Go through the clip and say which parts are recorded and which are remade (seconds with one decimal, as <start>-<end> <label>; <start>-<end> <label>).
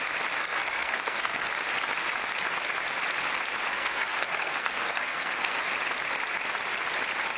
0.0-0.4 recorded; 0.4-1.5 remade; 1.5-3.7 recorded; 3.7-5.6 remade; 5.6-7.4 recorded